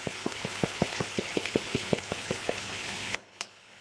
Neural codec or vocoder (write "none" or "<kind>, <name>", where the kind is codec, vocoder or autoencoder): codec, HILCodec